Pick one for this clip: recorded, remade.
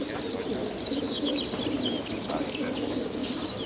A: recorded